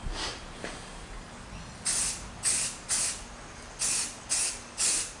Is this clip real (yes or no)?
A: yes